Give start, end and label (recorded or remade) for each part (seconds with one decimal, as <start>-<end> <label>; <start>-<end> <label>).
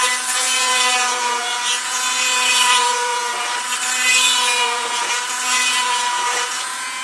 0.0-3.3 remade; 3.3-4.1 recorded; 4.1-7.0 remade